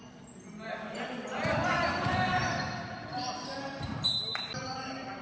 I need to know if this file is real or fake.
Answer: real